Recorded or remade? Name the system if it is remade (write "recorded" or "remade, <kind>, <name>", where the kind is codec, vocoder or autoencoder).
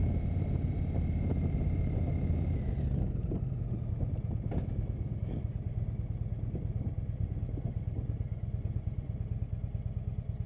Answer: recorded